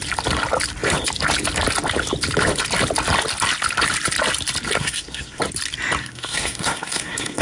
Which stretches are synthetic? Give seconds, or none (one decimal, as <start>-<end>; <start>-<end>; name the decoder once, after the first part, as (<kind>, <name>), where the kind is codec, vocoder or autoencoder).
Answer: 4.8-5.4 (codec, SNAC); 6.0-7.4